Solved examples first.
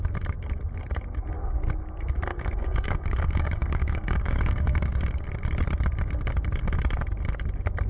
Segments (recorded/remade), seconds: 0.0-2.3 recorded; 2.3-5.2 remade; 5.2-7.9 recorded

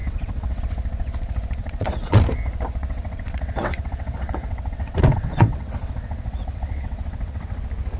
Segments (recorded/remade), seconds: 0.0-0.6 remade; 0.6-1.6 recorded; 1.6-2.2 remade; 2.2-2.8 recorded; 2.8-7.6 remade; 7.6-8.0 recorded